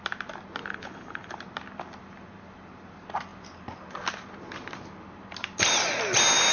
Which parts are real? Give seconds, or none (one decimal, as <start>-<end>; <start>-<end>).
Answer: 0.0-0.6; 1.3-6.5